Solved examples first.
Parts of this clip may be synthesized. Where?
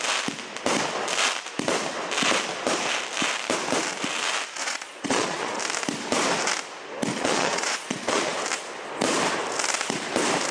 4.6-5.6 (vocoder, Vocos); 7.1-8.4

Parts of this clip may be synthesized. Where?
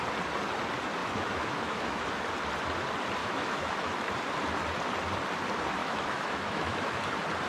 1.0-2.0 (autoencoder, DAC-VAE); 3.2-4.1; 5.8-7.0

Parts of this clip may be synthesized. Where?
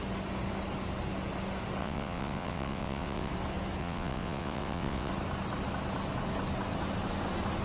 1.8-3.3 (vocoder, WaveNeXt); 3.8-5.1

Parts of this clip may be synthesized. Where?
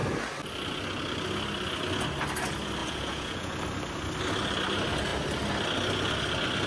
2.8-3.6 (vocoder, Vocos)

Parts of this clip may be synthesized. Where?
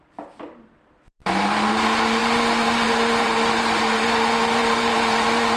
2.2-5.6 (vocoder, BigVGAN v2)